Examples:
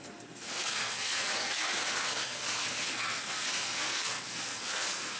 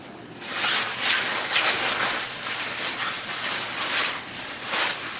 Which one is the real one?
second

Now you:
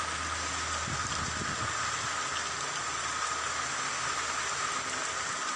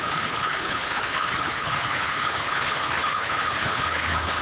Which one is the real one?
first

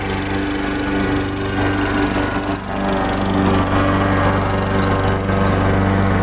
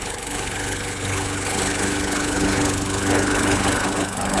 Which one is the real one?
first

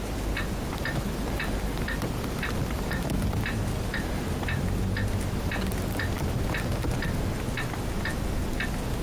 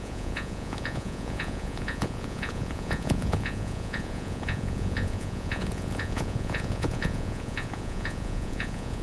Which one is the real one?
first